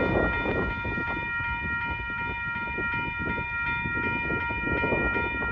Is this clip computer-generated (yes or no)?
no